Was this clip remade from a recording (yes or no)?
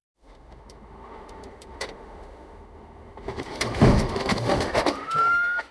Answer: yes